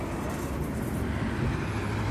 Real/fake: real